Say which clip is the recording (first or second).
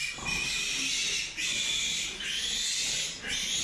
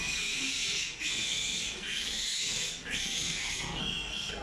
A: first